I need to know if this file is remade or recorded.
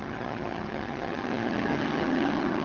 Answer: remade